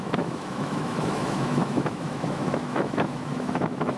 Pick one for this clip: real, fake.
fake